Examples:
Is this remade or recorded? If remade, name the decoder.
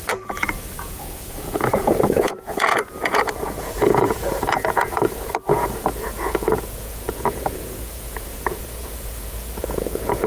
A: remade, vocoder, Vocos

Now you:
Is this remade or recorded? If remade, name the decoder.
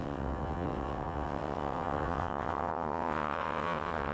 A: remade, vocoder, WaveNeXt